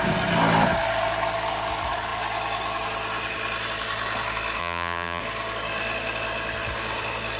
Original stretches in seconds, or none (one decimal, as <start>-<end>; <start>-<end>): 0.0-4.6; 5.2-7.4